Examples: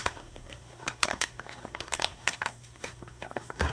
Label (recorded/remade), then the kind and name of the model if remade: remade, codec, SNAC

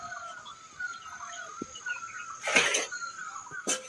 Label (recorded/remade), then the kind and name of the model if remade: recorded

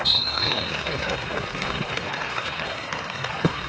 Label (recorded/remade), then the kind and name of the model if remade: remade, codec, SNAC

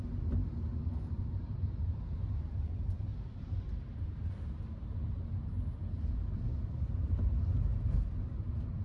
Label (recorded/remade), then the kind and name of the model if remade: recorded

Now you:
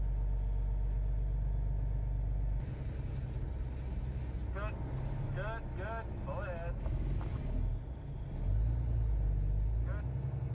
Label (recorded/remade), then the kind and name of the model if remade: recorded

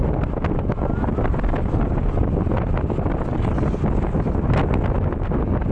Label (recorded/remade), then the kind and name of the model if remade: recorded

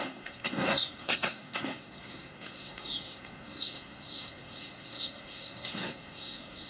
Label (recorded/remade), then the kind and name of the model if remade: remade, codec, SNAC